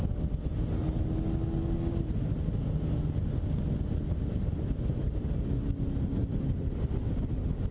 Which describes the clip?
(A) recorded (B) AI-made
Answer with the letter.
A